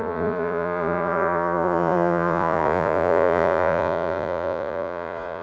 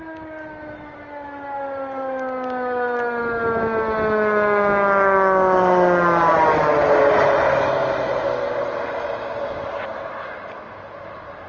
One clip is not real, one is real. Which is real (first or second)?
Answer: second